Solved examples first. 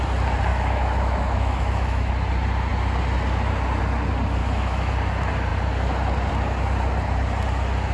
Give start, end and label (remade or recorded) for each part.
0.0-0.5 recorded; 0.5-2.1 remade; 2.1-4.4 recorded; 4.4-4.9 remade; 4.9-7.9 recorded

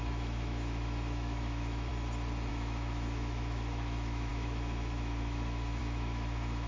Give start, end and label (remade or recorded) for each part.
0.0-1.9 remade; 1.9-2.5 recorded; 2.5-6.7 remade

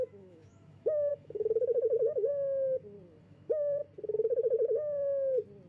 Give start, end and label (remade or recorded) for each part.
0.0-2.3 remade; 2.3-3.2 recorded; 3.2-3.8 remade; 3.8-5.7 recorded

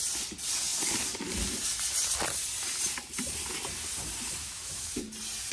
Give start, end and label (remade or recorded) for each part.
0.0-4.4 recorded; 4.4-5.0 remade; 5.0-5.5 recorded

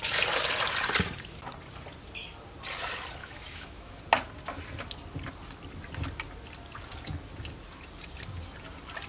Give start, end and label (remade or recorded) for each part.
0.0-3.2 recorded; 3.2-4.0 remade; 4.0-9.1 recorded

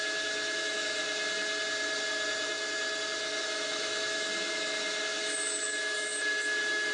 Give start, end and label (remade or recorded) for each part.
0.0-1.0 remade; 1.0-3.4 recorded; 3.4-6.9 remade

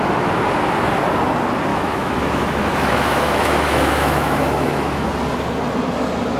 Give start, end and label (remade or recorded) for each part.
0.0-1.7 recorded; 1.7-5.1 remade; 5.1-6.4 recorded